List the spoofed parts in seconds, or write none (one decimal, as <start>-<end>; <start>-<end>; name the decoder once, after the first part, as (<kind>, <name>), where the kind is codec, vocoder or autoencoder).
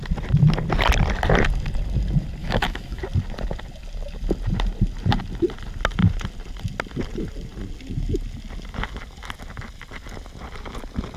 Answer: 2.4-3.0 (autoencoder, DAC-VAE)